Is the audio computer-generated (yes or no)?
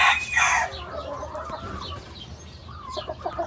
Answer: no